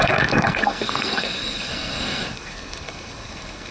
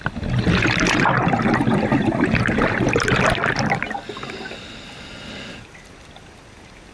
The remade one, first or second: first